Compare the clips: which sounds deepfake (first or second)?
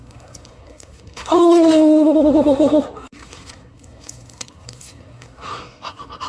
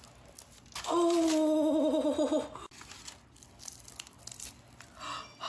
first